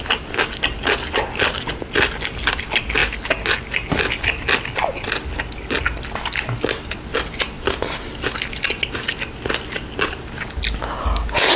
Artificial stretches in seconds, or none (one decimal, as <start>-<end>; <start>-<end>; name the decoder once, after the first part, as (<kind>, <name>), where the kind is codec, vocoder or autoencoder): none